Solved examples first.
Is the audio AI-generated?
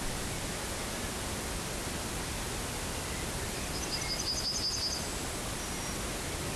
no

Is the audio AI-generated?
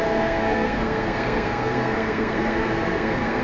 yes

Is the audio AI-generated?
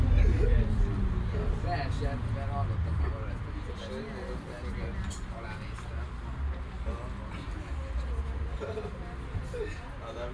no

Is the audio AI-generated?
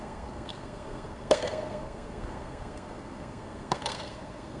yes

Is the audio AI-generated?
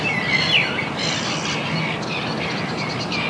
no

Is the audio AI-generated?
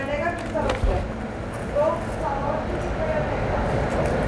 no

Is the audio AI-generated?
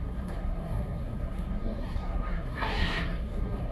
yes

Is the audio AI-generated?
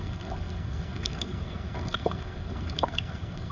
yes